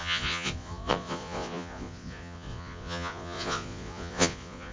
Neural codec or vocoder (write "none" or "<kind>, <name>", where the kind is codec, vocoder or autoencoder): vocoder, Vocos